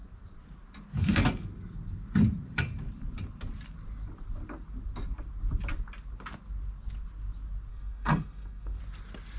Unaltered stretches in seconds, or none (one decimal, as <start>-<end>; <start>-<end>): 0.0-7.7; 8.8-9.4